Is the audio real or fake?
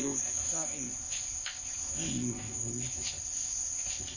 fake